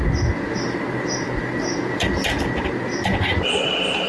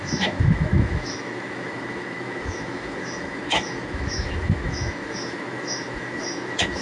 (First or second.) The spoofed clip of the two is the second